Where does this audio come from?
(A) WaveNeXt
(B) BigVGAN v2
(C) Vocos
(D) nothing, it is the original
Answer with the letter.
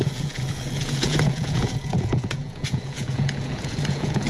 C